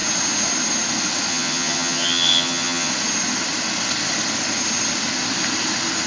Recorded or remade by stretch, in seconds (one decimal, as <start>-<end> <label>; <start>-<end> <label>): 0.0-1.3 recorded; 1.3-2.9 remade; 2.9-6.1 recorded